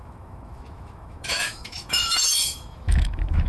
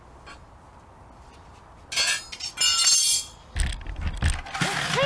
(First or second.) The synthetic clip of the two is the first